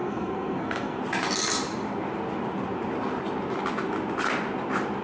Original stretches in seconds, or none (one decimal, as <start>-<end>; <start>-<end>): 1.0-5.0